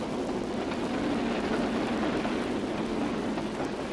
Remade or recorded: recorded